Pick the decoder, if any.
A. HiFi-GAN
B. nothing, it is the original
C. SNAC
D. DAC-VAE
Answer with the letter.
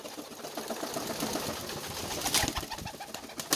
B